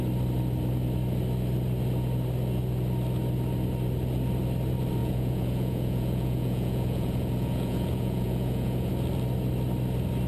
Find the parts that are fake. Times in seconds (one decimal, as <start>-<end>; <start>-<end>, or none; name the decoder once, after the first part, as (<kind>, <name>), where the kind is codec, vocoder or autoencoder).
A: 5.0-8.9 (vocoder, Vocos)